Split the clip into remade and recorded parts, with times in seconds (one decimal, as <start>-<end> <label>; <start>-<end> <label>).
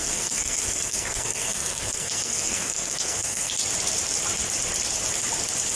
0.0-3.5 remade; 3.5-5.8 recorded